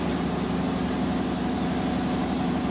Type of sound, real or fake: real